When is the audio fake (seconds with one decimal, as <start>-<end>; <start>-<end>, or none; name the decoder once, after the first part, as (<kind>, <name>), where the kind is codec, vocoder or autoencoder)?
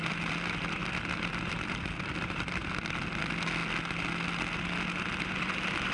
0.0-0.8 (vocoder, BigVGAN v2); 1.5-2.6; 3.2-3.6; 5.0-5.9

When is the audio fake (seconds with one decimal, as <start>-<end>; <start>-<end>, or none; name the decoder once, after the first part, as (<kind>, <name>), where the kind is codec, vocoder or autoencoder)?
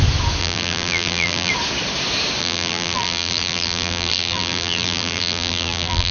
0.4-1.5 (vocoder, BigVGAN v2); 2.4-6.1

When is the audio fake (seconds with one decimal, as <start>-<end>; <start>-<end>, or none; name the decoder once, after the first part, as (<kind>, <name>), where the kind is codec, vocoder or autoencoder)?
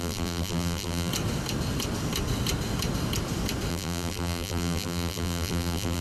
0.0-1.1 (vocoder, BigVGAN v2); 3.7-6.0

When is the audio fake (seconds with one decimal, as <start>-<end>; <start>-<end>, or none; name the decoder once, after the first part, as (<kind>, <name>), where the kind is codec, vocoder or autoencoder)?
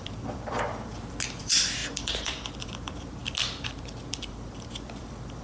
0.0-0.9 (vocoder, BigVGAN v2); 1.4-3.2; 4.3-5.4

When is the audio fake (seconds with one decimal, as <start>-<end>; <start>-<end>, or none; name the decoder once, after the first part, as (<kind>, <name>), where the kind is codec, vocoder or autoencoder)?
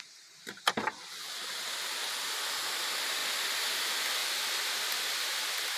none